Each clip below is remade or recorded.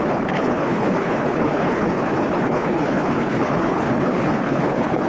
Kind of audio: remade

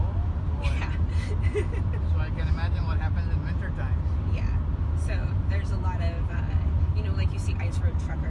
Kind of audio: recorded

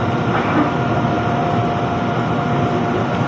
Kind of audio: recorded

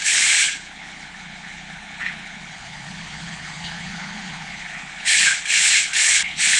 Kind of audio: remade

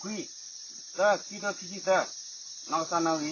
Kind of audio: recorded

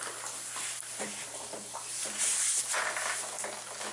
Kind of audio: recorded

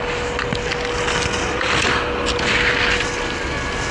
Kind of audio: recorded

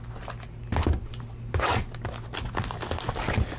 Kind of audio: recorded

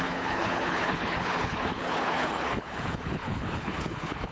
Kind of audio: remade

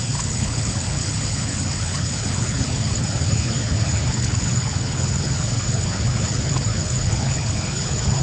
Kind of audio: remade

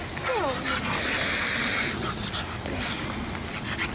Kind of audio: recorded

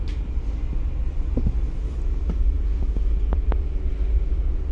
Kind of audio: recorded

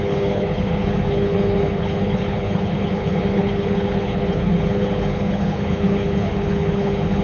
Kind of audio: remade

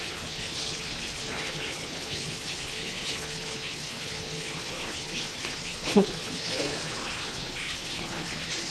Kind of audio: remade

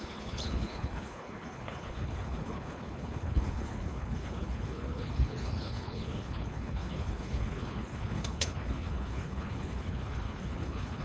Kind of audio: remade